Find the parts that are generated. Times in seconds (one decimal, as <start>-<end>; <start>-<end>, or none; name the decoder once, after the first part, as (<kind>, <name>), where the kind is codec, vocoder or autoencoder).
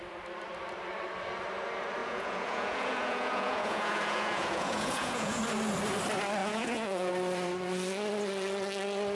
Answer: 2.0-5.4 (vocoder, Vocos); 6.4-7.1